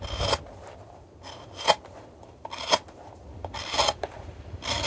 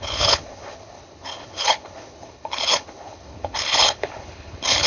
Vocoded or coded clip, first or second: second